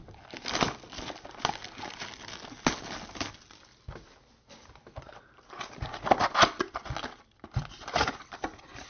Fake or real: real